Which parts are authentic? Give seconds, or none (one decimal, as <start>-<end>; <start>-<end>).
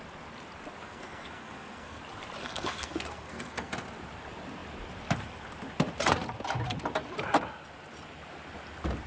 0.0-0.8; 2.0-2.4; 3.7-9.1